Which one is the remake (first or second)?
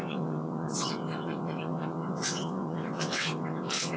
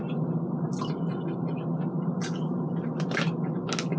first